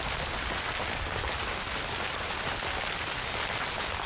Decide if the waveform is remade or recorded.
recorded